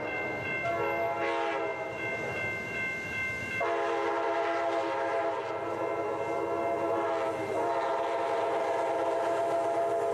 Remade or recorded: recorded